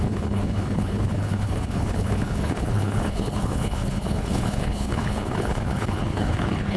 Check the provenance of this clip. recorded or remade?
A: remade